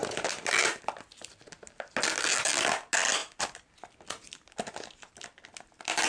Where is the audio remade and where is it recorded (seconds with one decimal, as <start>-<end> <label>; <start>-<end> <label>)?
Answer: 0.0-6.1 recorded